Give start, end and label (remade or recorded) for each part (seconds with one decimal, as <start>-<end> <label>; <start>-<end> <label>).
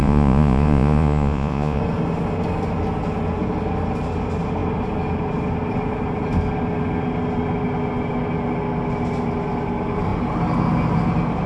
0.0-1.8 remade; 1.8-11.5 recorded